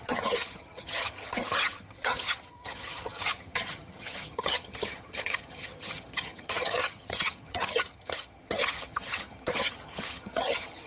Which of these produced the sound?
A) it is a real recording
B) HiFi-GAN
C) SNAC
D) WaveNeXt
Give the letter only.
B